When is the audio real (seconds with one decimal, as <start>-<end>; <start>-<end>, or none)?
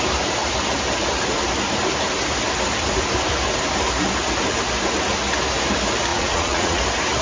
0.0-6.1; 6.8-7.2